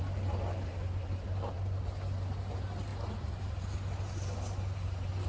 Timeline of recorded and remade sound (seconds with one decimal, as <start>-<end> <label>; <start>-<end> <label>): 0.0-5.3 recorded